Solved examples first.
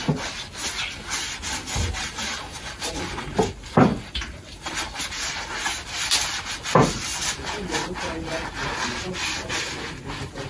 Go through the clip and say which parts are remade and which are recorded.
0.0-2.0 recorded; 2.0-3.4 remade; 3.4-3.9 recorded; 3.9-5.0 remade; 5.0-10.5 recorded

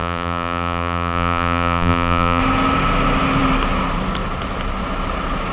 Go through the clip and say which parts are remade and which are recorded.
0.0-2.4 remade; 2.4-5.5 recorded

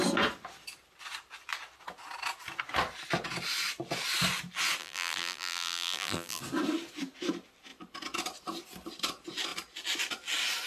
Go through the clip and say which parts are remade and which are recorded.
0.0-4.8 recorded; 4.8-6.4 remade; 6.4-10.7 recorded

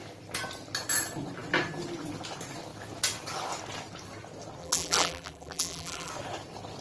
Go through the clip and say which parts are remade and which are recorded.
0.0-4.6 recorded; 4.6-6.1 remade; 6.1-6.8 recorded